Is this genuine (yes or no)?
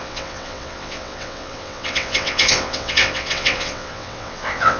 no